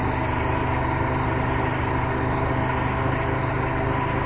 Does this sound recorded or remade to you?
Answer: recorded